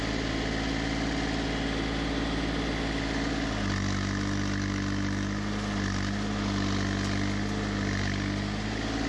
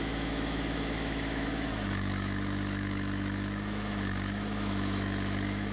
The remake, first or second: second